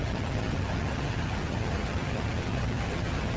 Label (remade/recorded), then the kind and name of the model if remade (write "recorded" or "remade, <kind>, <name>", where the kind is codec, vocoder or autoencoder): remade, vocoder, HiFi-GAN